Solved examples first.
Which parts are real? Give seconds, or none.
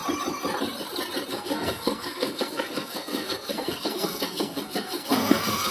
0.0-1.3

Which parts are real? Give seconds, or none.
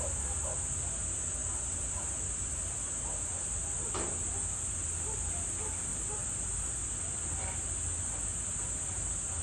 0.0-5.9; 7.0-9.4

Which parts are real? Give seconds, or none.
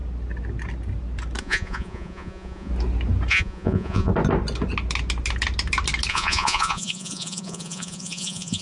0.0-1.4; 2.7-3.3; 4.1-6.1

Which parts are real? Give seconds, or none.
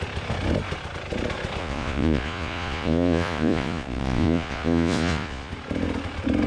0.0-1.6; 5.5-6.5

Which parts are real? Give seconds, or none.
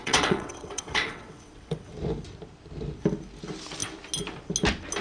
1.9-5.0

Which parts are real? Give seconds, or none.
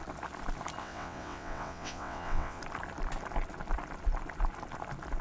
0.0-0.8; 2.6-5.2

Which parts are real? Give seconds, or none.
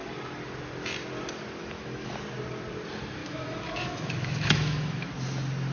0.0-1.6; 2.1-3.2; 5.1-5.7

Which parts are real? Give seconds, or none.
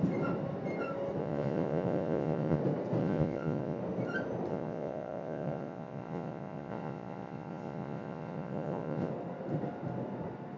0.0-1.2; 2.6-3.0; 3.8-4.5; 9.1-10.6